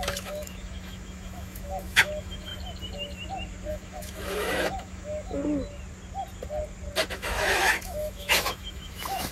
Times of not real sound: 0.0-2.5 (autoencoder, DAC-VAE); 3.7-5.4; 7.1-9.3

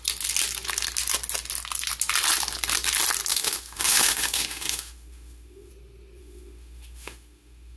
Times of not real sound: 3.3-5.7 (autoencoder, DAC-VAE); 6.2-7.8

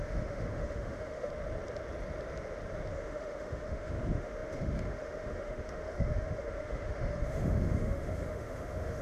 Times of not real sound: 0.0-1.3 (autoencoder, DAC-VAE); 2.9-9.0

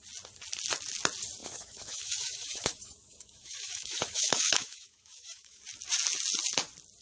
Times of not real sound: 1.4-5.6 (autoencoder, DAC-VAE)